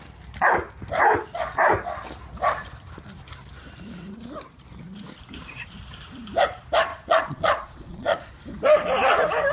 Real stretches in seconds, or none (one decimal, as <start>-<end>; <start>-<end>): 0.0-6.9; 8.3-9.5